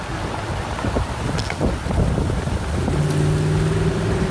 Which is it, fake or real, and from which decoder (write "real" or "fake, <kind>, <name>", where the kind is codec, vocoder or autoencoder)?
real